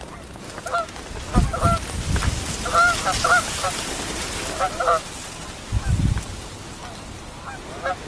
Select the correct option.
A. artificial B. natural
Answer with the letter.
B